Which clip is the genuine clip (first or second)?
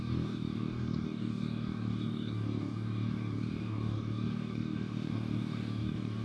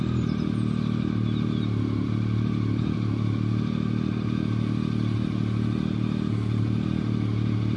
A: second